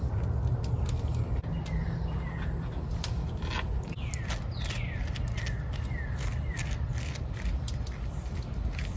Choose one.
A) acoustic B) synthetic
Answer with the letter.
A